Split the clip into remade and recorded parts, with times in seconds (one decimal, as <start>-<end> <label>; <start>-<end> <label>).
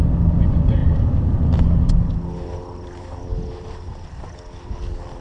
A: 0.0-5.2 recorded